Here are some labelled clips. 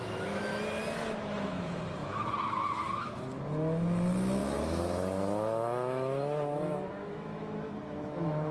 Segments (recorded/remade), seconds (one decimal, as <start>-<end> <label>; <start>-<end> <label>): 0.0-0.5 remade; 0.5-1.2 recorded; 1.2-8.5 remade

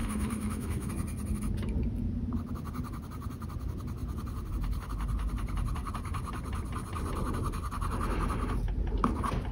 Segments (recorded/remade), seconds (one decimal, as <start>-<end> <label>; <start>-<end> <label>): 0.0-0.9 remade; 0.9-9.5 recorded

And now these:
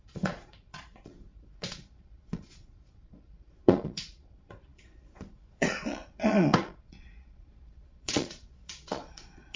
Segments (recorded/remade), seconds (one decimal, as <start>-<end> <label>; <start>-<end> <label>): 0.0-9.6 remade